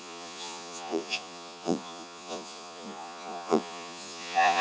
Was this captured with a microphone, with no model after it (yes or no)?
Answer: no